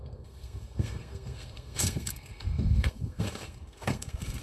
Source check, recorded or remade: remade